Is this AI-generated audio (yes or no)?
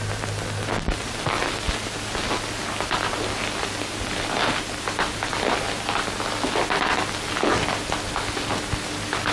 no